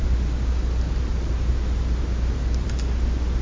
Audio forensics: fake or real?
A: real